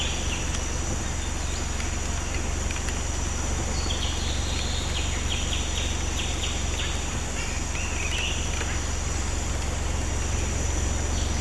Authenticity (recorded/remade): recorded